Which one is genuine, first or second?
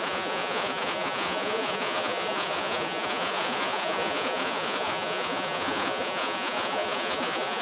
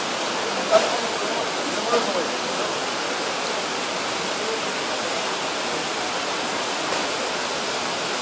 second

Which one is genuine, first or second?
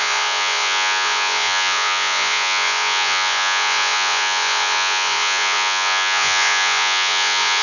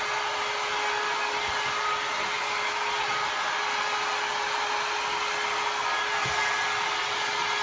second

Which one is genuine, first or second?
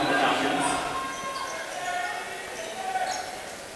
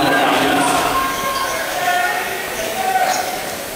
first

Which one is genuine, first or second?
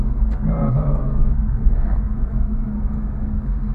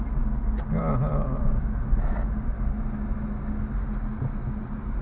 second